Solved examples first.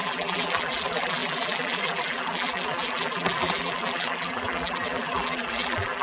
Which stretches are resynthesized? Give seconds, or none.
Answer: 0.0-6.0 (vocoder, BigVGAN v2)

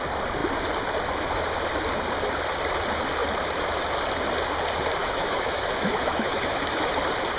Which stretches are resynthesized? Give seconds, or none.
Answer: 5.0-6.9 (autoencoder, DAC-VAE)

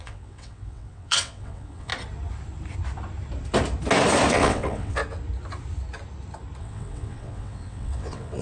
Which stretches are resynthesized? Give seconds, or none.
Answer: 0.0-1.9 (vocoder, WaveNeXt); 4.3-5.0; 6.6-8.4

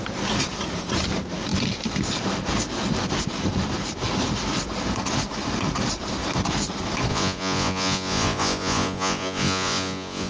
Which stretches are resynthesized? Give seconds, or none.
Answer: 7.1-10.3 (vocoder, Vocos)